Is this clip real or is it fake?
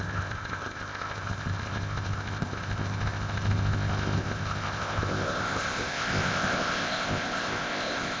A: fake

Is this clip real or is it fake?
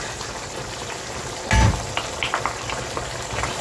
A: real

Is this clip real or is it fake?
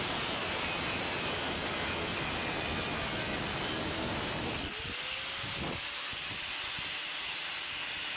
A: real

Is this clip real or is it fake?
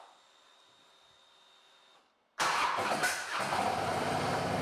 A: real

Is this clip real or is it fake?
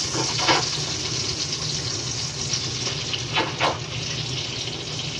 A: real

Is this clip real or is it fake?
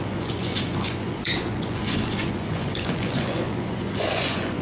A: fake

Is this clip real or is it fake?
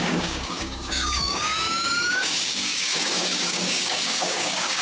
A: fake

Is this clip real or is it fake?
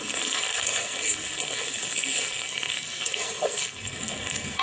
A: fake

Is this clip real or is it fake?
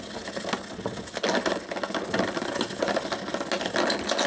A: real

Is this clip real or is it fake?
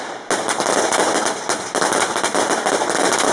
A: real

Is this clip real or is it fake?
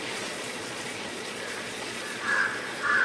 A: fake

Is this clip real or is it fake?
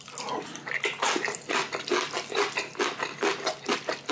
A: real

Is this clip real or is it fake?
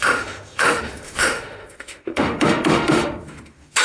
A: fake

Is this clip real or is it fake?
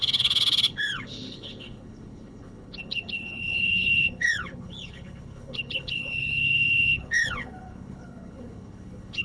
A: fake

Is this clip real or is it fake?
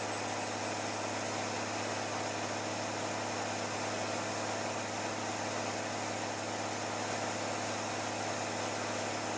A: real